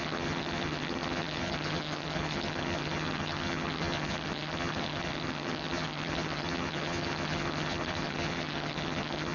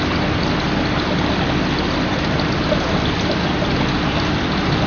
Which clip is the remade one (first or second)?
first